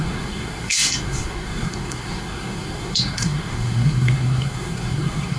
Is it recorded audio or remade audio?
remade